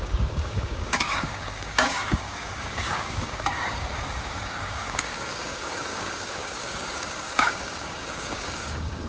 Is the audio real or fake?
fake